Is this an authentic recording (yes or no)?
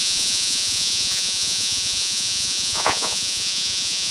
no